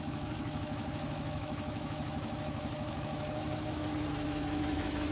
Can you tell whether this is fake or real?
fake